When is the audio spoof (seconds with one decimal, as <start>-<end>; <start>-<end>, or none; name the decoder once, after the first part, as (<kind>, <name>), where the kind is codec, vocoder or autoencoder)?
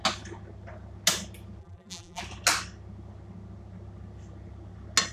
1.6-2.2 (vocoder, BigVGAN v2)